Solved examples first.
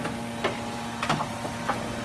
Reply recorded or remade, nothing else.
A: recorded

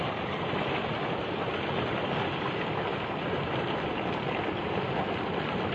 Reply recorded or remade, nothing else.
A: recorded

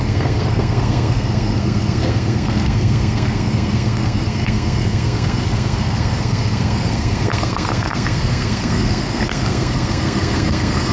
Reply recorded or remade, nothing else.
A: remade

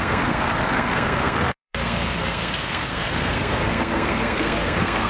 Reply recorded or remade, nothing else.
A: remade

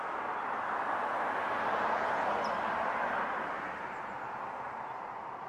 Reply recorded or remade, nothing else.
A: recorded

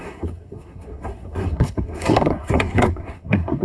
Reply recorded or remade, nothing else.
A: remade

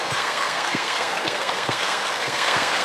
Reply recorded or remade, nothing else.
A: remade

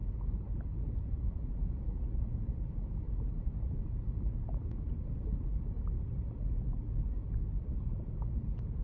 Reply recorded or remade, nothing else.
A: recorded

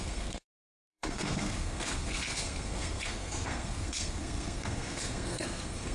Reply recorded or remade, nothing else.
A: remade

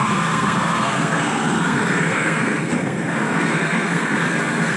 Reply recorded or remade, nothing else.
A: remade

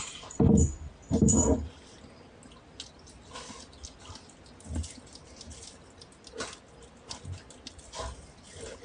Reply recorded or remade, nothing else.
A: recorded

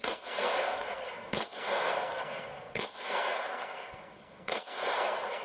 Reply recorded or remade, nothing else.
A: remade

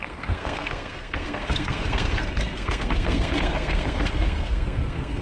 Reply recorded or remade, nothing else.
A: remade